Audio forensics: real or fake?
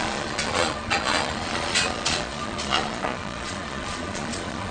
fake